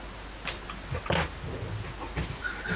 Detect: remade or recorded recorded